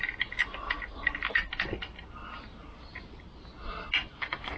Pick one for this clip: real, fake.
real